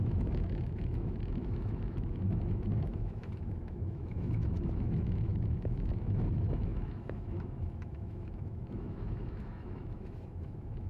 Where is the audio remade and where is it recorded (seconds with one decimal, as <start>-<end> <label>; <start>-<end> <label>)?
0.0-10.9 remade